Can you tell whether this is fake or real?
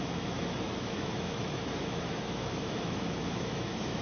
fake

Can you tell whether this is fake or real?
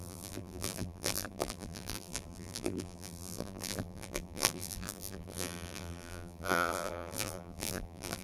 fake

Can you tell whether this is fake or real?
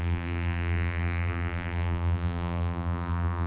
fake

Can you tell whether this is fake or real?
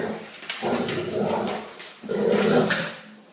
real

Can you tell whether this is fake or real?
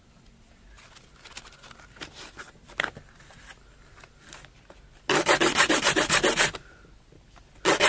real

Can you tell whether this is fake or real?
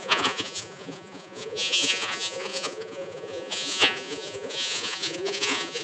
fake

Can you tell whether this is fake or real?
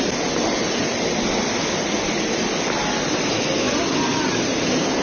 real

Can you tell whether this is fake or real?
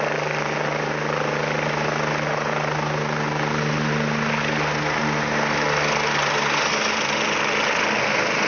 real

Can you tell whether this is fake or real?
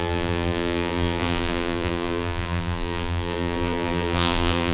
fake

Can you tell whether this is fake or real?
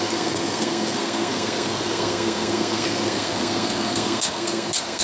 fake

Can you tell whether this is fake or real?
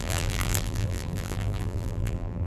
fake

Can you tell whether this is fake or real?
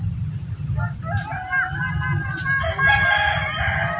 real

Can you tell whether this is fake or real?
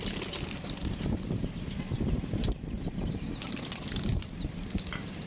real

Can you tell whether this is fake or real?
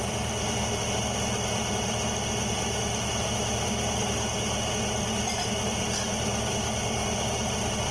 real